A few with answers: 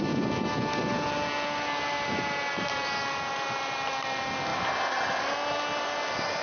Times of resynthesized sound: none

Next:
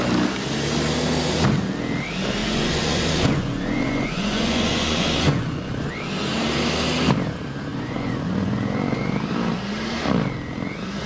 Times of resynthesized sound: 2.4-5.9; 7.7-9.1

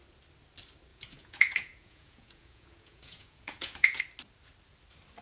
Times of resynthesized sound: 0.9-4.0

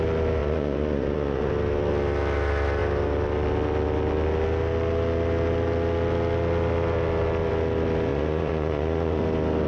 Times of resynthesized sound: 0.4-1.5; 8.1-9.2